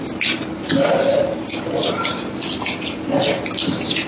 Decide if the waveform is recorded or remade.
recorded